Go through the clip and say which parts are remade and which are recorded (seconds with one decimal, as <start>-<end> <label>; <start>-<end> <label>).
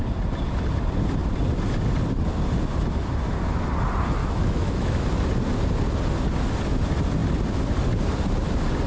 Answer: 0.0-4.2 recorded; 4.2-5.0 remade; 5.0-8.9 recorded